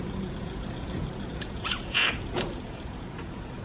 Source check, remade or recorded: remade